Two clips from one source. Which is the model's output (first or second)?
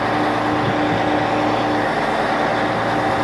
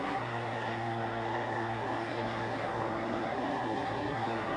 second